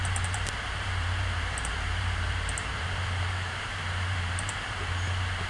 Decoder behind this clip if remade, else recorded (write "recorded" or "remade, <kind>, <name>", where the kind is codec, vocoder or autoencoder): remade, vocoder, BigVGAN v2